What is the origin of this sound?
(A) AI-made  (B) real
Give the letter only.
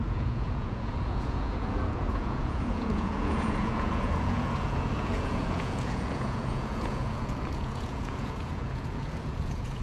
A